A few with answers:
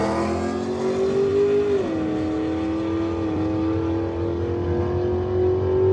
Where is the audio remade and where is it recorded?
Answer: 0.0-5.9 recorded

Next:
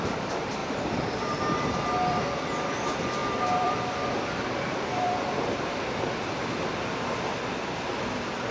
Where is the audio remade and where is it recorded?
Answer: 0.0-0.6 recorded; 0.6-2.2 remade; 2.2-3.2 recorded; 3.2-6.5 remade; 6.5-8.5 recorded

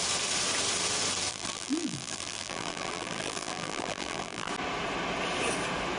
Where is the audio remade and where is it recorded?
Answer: 0.0-1.3 recorded; 1.3-4.5 remade; 4.5-6.0 recorded

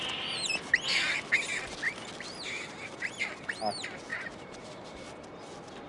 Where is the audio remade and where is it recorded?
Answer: 0.0-4.1 recorded; 4.1-5.1 remade; 5.1-5.9 recorded